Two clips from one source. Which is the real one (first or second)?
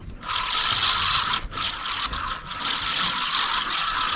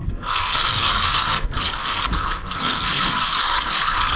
first